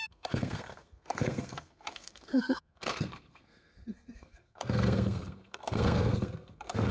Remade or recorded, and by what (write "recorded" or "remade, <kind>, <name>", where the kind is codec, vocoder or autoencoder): remade, codec, SNAC